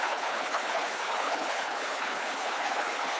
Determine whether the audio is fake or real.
fake